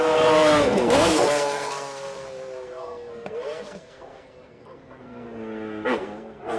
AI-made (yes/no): yes